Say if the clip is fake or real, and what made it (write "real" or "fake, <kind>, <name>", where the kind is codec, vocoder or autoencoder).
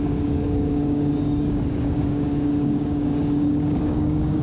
fake, codec, DAC